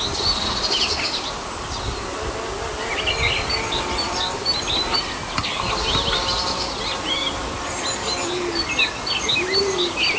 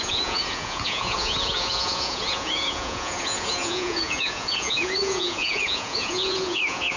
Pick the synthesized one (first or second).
second